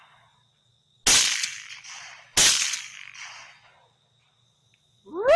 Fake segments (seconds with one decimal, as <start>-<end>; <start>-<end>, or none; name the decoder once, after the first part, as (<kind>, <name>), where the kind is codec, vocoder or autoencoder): none